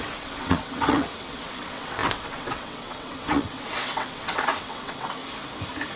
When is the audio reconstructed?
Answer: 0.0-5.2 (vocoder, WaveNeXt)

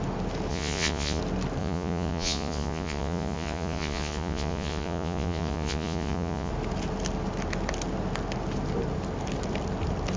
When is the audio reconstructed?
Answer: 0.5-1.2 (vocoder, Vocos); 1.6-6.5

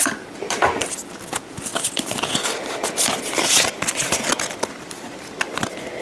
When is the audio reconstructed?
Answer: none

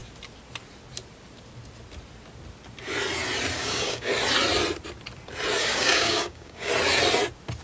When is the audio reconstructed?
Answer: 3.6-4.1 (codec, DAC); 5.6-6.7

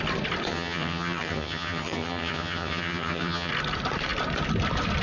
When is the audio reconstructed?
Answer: 0.5-3.5 (vocoder, HiFi-GAN)

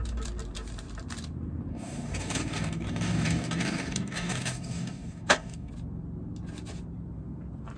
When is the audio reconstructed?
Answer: 1.7-5.7 (codec, DAC)